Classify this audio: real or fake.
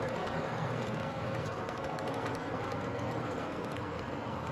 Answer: fake